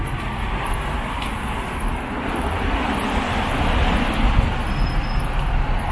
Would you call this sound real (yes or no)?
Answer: yes